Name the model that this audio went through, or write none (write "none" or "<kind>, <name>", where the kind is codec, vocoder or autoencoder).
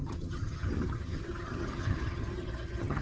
vocoder, HiFi-GAN